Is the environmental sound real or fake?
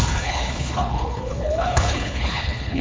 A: fake